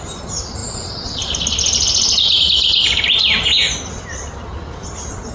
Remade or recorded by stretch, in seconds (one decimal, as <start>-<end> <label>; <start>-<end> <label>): 0.0-5.3 recorded